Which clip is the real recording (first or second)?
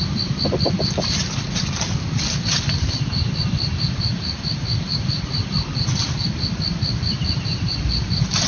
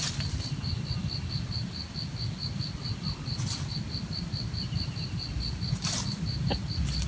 second